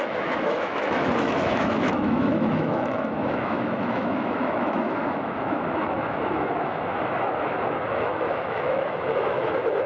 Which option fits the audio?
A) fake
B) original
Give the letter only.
A